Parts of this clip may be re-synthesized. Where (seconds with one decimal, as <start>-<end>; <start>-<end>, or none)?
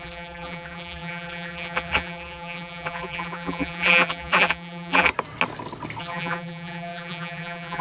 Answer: 0.0-5.1; 6.0-7.8